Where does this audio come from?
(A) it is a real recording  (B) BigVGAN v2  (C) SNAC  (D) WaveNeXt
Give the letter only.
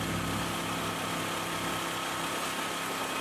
A